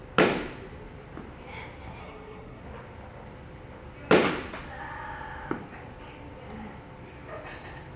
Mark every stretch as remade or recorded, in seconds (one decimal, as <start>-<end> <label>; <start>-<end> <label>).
0.0-2.0 recorded; 2.0-2.6 remade; 2.6-8.0 recorded